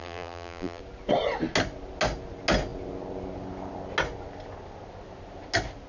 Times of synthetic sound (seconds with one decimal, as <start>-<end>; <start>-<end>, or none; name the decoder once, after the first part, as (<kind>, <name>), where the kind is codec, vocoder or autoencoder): 0.0-0.8 (vocoder, BigVGAN v2)